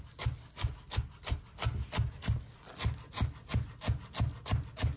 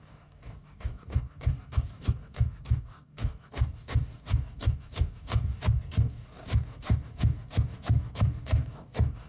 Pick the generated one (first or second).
second